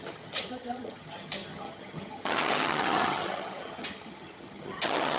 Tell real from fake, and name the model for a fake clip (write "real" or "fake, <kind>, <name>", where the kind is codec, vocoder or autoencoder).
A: fake, vocoder, HiFi-GAN